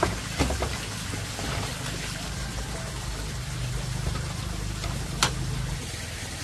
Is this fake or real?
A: real